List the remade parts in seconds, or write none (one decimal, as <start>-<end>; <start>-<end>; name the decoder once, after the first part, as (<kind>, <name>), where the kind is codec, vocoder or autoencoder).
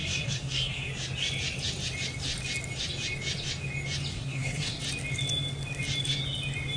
0.0-0.9 (codec, SNAC); 4.1-4.8